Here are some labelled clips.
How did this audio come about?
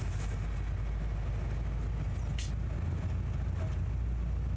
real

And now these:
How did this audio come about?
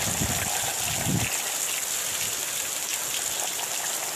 real